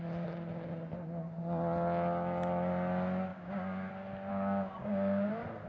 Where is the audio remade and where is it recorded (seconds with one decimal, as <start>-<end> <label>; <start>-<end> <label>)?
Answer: 0.0-3.3 recorded; 3.3-3.9 remade; 3.9-4.3 recorded; 4.3-5.3 remade; 5.3-5.7 recorded